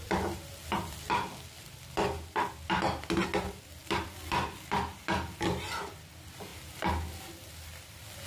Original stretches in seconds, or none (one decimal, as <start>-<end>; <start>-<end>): 6.5-7.2